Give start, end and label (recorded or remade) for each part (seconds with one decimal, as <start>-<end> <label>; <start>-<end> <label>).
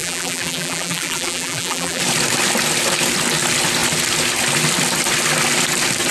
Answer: 0.0-2.0 remade; 2.0-6.1 recorded